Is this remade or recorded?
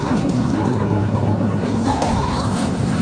remade